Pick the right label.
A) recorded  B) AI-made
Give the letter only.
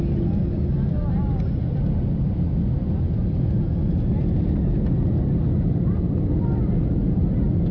A